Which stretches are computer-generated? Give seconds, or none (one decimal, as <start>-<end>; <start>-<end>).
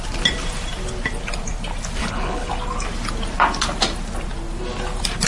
2.0-2.5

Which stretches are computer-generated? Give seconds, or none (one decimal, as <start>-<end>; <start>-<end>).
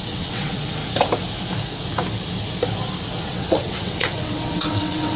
0.0-0.8; 3.2-5.2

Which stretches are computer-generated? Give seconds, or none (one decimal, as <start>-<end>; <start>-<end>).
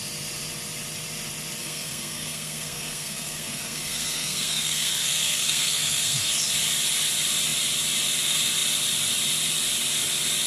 1.6-6.3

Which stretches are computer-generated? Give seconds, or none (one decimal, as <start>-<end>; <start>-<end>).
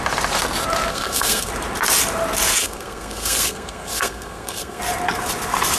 0.9-1.5; 2.6-4.8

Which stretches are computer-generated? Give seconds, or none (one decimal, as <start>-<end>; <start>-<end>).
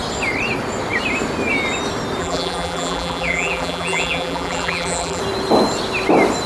2.2-5.2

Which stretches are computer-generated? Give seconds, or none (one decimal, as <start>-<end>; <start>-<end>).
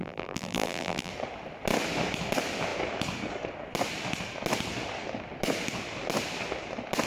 0.0-1.1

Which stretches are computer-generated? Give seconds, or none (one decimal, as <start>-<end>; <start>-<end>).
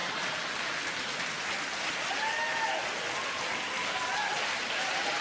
none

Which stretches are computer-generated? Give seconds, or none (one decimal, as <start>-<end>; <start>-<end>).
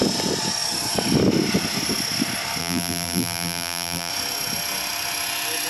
2.6-4.1